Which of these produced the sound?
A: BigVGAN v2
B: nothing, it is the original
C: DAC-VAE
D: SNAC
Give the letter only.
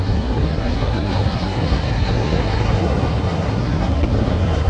D